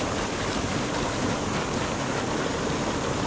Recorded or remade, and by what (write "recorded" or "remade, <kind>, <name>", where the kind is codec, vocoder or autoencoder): recorded